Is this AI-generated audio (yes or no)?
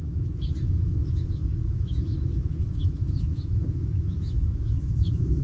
yes